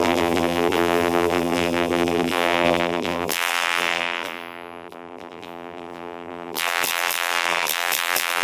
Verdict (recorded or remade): remade